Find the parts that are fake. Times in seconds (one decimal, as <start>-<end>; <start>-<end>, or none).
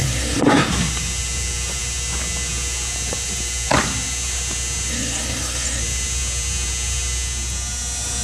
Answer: 0.0-0.7; 4.9-5.8